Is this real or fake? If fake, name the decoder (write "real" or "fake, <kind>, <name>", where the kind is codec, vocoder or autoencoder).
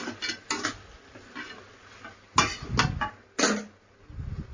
real